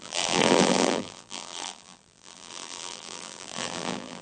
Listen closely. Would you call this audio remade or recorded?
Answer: remade